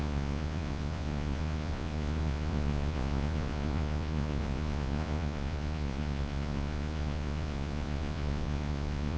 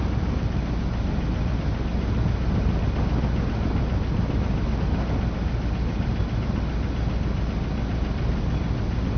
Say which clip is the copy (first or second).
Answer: first